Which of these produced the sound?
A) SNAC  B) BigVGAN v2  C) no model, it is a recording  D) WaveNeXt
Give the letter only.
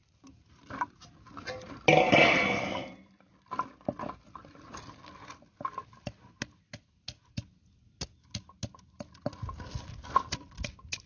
C